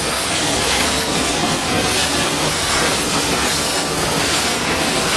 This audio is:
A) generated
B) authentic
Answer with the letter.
A